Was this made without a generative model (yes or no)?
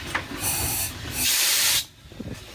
no